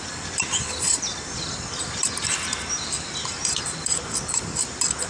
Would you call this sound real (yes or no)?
no